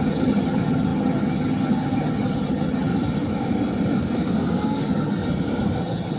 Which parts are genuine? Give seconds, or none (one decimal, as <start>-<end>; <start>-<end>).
2.9-4.8; 5.2-5.8